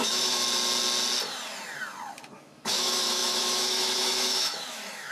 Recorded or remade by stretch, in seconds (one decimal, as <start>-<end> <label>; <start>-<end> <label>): 0.0-0.4 remade; 0.4-2.3 recorded; 2.3-5.1 remade